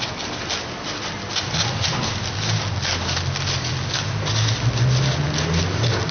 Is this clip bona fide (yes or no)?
yes